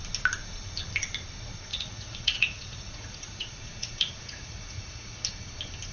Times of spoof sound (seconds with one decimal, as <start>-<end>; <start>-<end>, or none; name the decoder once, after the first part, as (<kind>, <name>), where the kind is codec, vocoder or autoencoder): 1.7-5.2 (vocoder, Vocos)